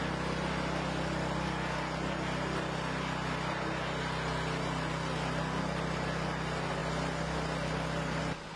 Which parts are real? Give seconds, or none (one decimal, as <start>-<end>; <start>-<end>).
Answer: 0.0-8.6